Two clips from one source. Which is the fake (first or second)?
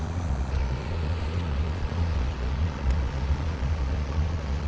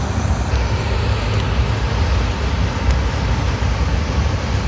first